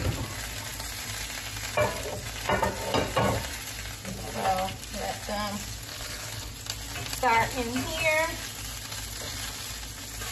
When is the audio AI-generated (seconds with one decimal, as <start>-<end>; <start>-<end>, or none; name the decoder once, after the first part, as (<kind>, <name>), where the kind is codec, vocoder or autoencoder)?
5.9-6.5 (codec, HILCodec)